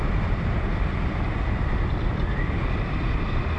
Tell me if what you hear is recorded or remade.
recorded